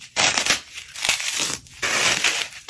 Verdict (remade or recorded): remade